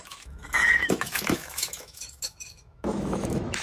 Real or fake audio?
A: fake